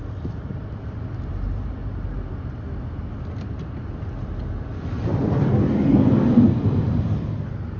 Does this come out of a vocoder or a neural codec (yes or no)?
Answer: no